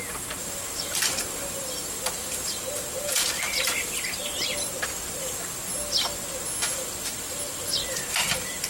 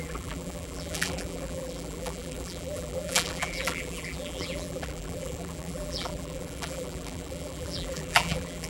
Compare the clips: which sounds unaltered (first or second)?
first